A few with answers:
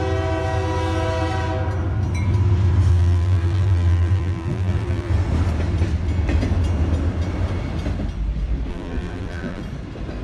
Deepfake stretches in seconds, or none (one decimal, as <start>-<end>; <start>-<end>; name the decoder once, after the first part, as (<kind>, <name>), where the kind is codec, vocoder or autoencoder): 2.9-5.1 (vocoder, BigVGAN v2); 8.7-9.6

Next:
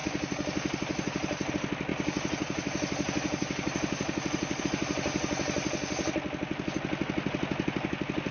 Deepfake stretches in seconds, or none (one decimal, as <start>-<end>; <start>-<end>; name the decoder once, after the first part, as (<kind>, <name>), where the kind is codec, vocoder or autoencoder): none

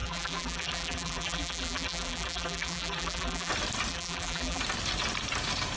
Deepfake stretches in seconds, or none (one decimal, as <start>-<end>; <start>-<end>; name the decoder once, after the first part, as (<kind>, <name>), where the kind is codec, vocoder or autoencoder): 0.0-3.5 (vocoder, BigVGAN v2); 3.9-4.6

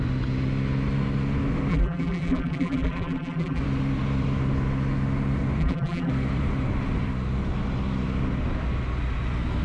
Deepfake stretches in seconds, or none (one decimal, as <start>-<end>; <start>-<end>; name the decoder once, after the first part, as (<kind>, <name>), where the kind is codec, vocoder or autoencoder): 1.7-3.6 (vocoder, BigVGAN v2); 5.6-6.1